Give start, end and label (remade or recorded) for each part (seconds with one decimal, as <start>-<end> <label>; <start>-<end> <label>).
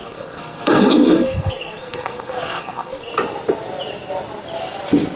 0.0-3.1 remade; 3.1-5.2 recorded